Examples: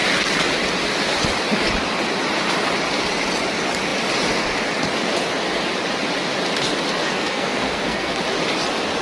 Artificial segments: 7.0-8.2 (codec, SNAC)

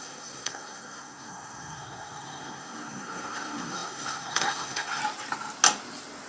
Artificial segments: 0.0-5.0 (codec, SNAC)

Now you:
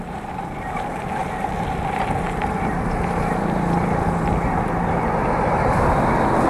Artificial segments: none

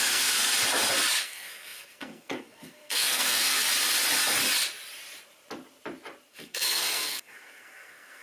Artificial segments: 0.0-0.5 (codec, SNAC); 1.2-3.6; 6.3-8.2

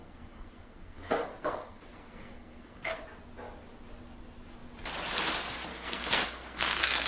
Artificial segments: 0.0-3.0 (codec, SNAC); 5.7-7.1